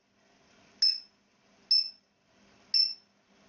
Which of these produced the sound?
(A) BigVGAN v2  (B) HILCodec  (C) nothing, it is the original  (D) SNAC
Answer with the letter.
C